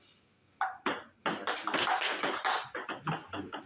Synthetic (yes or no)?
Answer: no